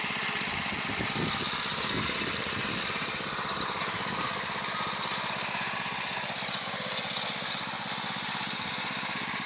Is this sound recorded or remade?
recorded